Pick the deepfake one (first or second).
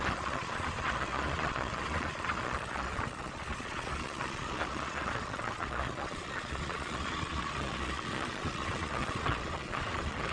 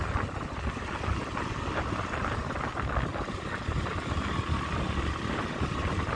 first